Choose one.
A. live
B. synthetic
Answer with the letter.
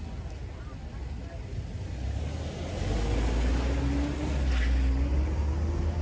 A